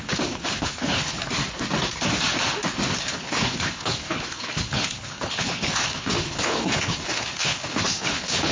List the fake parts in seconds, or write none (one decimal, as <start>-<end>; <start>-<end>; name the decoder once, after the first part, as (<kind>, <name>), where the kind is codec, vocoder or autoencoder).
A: 0.0-1.3 (codec, HILCodec); 3.0-8.5